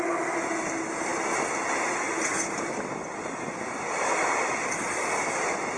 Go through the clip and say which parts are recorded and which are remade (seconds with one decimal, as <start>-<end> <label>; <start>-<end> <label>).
0.0-5.8 recorded